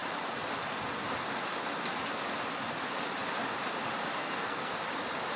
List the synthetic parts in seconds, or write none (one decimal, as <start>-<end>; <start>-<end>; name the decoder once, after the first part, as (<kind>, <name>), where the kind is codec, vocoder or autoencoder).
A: 4.2-4.7 (codec, SNAC)